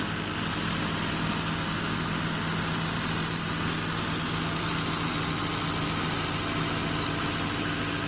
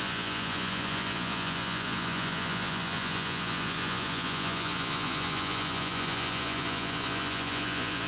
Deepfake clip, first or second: second